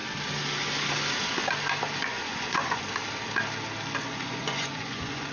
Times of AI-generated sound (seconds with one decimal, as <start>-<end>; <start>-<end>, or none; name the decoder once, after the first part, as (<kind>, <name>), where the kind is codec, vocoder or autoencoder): 2.1-2.8 (vocoder, Vocos); 4.0-5.3